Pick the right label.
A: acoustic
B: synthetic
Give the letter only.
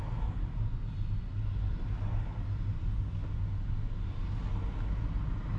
A